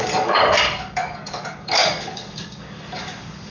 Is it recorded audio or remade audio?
remade